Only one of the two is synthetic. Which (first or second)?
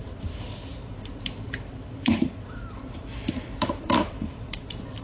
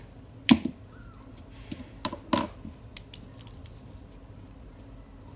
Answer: first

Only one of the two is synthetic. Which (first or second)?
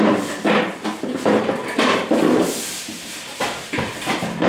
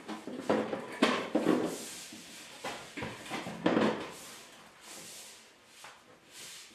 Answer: first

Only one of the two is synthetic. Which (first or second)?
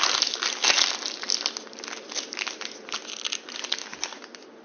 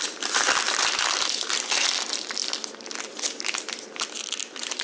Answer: second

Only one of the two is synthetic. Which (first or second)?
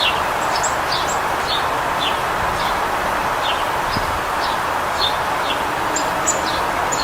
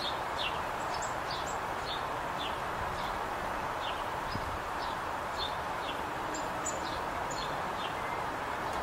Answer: second